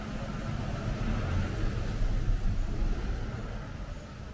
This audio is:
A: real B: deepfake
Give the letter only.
A